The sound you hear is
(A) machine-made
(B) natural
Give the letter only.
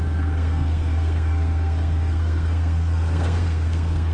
A